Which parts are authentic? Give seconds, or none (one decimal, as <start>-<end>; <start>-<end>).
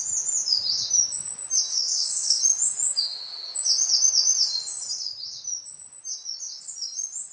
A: 0.0-1.7; 2.4-7.3